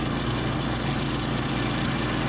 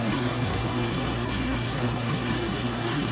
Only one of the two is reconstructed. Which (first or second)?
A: second